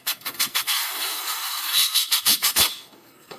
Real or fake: fake